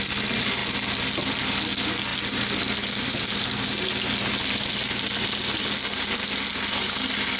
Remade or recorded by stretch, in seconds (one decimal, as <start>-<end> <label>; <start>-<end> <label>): 0.0-7.4 recorded